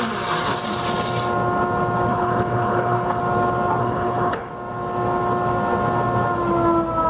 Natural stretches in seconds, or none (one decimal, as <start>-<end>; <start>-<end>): 0.0-2.1; 3.2-3.8; 4.5-7.1